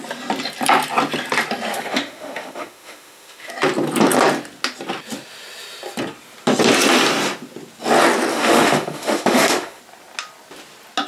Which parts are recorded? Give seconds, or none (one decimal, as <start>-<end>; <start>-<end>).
0.0-1.7; 3.5-8.3; 9.8-11.1